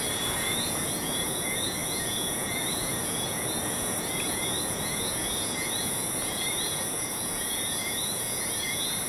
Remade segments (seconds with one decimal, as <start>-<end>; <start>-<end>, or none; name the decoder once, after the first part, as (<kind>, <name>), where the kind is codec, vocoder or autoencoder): 0.0-9.1 (vocoder, Vocos)